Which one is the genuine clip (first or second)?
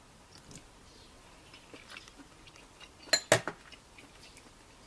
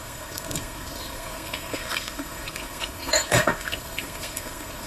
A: first